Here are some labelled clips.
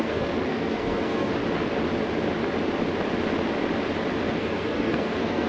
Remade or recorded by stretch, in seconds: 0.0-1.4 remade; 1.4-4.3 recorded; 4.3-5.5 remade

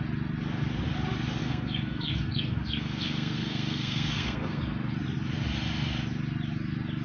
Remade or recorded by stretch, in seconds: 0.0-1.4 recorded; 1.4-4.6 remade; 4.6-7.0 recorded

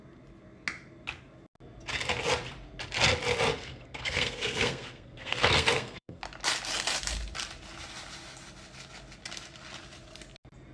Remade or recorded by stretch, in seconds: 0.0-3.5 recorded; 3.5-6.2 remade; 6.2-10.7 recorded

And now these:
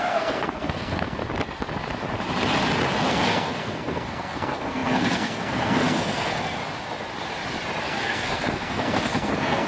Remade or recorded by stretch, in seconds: 0.0-1.2 remade; 1.2-3.1 recorded; 3.1-6.6 remade; 6.6-7.8 recorded; 7.8-9.7 remade

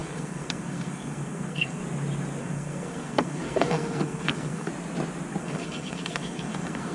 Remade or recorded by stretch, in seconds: 0.0-1.8 remade; 1.8-2.4 recorded; 2.4-4.7 remade; 4.7-5.4 recorded; 5.4-6.9 remade